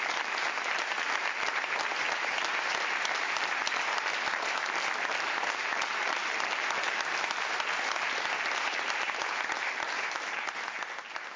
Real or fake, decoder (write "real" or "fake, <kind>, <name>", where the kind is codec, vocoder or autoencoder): real